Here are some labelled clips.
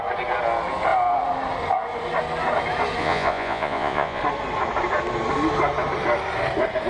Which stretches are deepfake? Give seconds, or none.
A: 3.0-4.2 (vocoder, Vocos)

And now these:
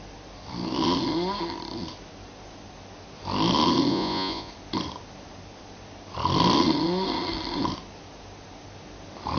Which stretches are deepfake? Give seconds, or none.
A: 3.9-4.5 (vocoder, Vocos)

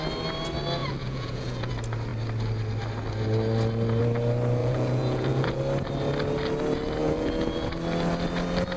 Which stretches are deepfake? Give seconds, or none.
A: 0.8-1.7 (vocoder, Vocos); 4.6-5.6; 7.0-7.7

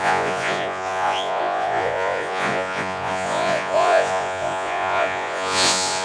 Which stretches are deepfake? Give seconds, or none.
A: 0.0-6.0 (vocoder, Vocos)

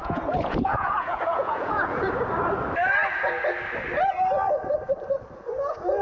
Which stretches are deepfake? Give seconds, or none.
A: 0.0-2.1 (vocoder, Vocos)

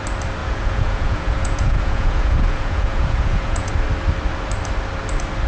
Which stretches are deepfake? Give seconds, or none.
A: 0.4-3.7 (vocoder, Vocos)

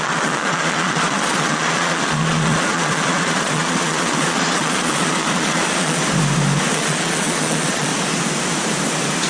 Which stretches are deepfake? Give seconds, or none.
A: 0.0-6.0 (vocoder, Vocos); 6.7-7.9

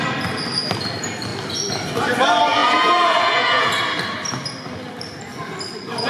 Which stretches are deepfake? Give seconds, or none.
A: 2.6-3.7 (vocoder, Vocos)